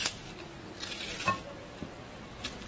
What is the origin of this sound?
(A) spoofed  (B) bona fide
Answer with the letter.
B